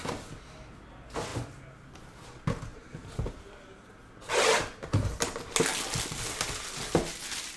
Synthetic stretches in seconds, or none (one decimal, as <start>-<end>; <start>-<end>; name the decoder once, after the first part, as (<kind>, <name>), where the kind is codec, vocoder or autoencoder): none